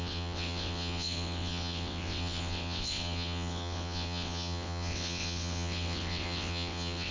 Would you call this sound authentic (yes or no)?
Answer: no